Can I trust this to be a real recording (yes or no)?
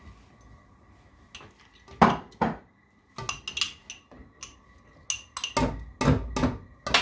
yes